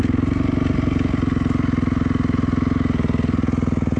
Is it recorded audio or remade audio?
recorded